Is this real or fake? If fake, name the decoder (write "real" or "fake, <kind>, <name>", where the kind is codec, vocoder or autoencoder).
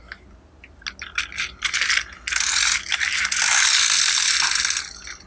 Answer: real